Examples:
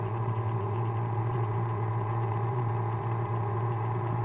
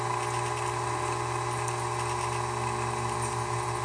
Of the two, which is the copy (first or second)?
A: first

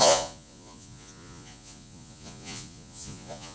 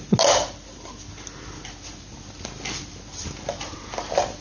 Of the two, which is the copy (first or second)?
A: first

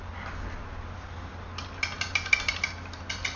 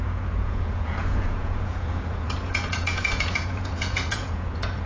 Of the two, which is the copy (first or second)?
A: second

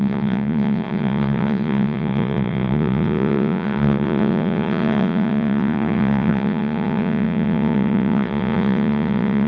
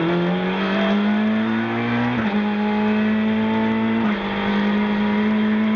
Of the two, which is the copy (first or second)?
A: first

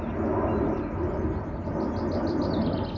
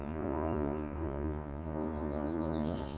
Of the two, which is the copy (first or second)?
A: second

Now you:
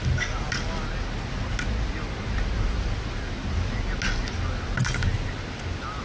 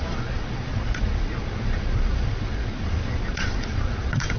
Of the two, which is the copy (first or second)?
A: second